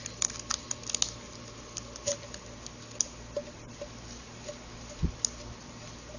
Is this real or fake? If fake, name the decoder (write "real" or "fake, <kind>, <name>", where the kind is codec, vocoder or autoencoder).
real